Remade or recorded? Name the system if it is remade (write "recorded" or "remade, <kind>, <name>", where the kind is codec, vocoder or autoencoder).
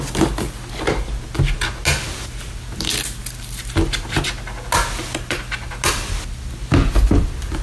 recorded